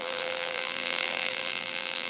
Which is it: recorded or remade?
remade